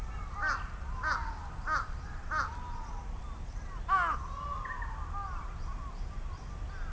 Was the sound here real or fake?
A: real